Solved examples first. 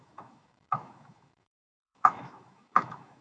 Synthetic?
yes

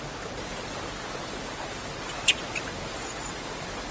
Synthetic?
yes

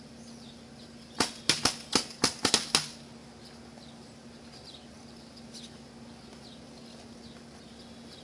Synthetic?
no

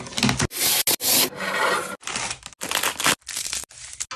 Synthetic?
no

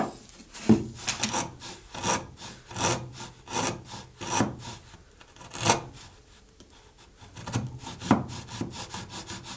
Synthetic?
no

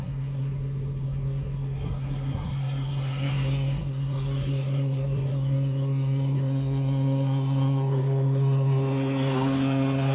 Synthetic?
yes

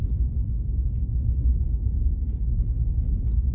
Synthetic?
no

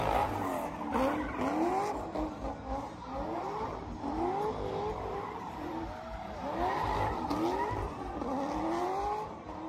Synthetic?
no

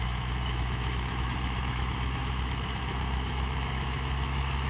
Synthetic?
yes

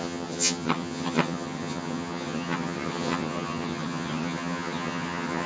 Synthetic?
yes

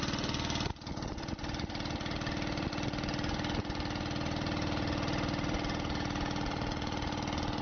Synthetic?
no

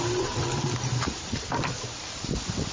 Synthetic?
yes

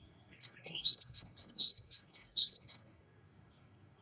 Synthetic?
yes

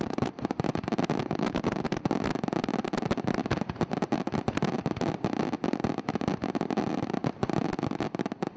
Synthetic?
no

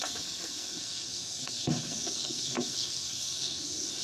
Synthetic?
yes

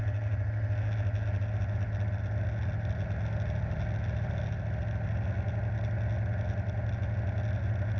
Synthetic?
no